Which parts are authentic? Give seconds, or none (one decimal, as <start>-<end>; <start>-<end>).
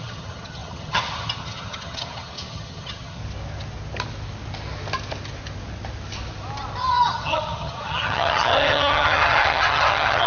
3.2-6.8